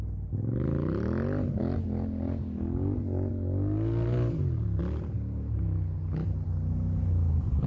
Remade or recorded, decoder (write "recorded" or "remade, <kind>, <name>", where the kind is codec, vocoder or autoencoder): recorded